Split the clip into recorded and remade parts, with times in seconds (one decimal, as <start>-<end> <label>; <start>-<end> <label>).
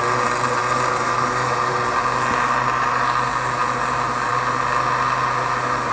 0.0-5.9 recorded